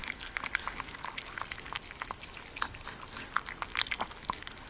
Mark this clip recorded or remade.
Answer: recorded